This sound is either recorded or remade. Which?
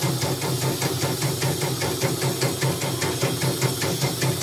recorded